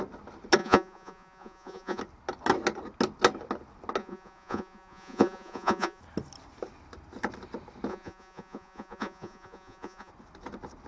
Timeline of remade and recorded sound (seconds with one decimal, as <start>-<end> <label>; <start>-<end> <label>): 0.0-0.6 recorded; 0.6-2.0 remade; 2.0-4.0 recorded; 4.0-6.0 remade; 6.0-7.9 recorded; 7.9-10.1 remade; 10.1-10.9 recorded